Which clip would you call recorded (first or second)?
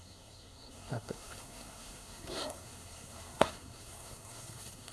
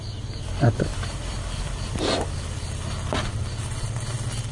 second